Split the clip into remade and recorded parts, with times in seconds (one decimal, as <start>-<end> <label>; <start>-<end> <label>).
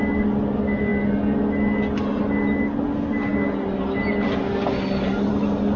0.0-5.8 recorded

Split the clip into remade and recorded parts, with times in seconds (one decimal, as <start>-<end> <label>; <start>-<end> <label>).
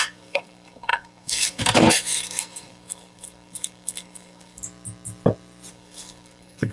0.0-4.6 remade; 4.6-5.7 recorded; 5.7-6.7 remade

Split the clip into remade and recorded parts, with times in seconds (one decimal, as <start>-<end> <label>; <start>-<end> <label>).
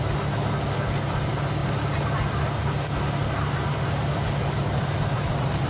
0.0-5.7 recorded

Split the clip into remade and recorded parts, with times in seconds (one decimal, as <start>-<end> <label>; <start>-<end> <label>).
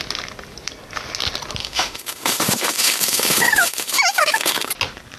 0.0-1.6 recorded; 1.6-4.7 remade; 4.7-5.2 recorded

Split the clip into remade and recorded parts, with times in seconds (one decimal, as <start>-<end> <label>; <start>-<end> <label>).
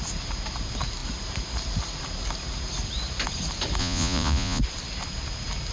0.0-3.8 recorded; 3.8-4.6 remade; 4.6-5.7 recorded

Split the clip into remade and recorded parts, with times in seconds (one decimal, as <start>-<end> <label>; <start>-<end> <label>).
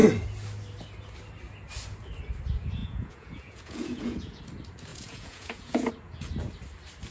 0.0-2.8 recorded; 2.8-4.4 remade; 4.4-4.9 recorded; 4.9-5.9 remade; 5.9-7.1 recorded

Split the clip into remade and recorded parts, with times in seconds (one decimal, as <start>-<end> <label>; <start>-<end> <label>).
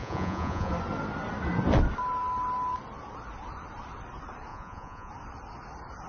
0.0-0.7 remade; 0.7-4.5 recorded; 4.5-5.1 remade; 5.1-6.1 recorded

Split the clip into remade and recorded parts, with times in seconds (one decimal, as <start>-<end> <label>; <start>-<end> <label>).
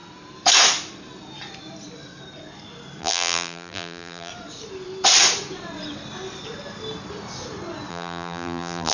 0.0-3.0 recorded; 3.0-4.3 remade; 4.3-7.9 recorded; 7.9-8.9 remade